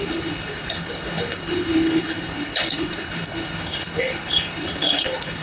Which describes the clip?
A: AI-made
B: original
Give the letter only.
A